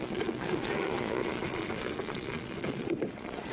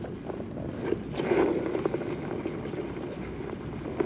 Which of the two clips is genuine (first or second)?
second